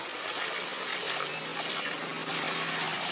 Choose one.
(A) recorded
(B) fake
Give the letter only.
A